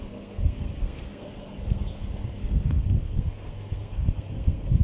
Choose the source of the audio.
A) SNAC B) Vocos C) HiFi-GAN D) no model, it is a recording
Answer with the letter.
A